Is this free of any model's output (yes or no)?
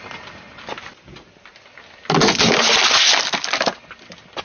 yes